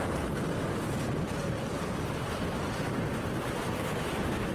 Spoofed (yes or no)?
no